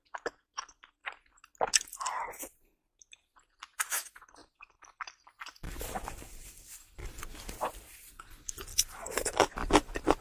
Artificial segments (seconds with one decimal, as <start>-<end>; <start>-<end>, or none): 4.4-7.1; 8.7-9.7